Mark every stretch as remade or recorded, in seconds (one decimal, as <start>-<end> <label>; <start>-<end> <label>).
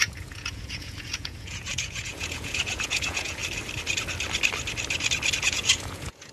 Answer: 0.0-3.4 remade; 3.4-5.4 recorded; 5.4-6.3 remade